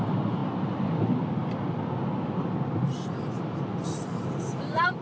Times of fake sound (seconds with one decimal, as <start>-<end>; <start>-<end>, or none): 0.0-0.4; 3.3-5.0